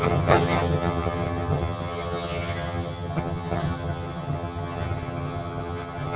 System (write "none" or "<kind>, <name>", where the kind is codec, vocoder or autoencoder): vocoder, HiFi-GAN